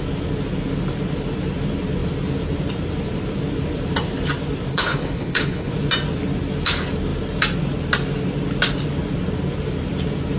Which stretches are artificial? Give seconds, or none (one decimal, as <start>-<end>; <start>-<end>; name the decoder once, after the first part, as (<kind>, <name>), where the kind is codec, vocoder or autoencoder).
4.7-5.7 (codec, HILCodec)